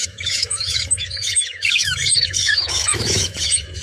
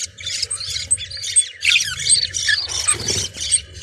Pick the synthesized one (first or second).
first